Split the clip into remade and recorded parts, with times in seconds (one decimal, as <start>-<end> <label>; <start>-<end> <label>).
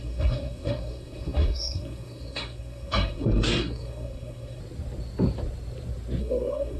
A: 0.0-4.6 remade; 4.6-6.2 recorded; 6.2-6.8 remade